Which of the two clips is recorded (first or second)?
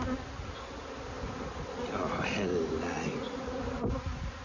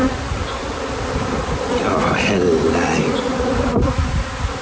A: first